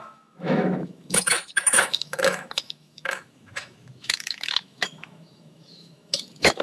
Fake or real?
fake